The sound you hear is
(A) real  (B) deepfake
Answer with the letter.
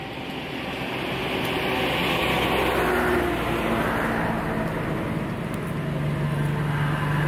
A